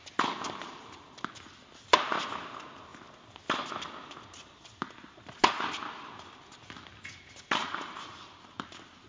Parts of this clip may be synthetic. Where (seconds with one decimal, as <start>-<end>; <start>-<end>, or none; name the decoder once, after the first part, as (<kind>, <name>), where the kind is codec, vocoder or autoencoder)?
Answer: 7.6-8.5 (vocoder, BigVGAN v2)